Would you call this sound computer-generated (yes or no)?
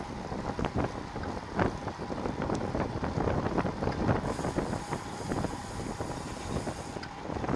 no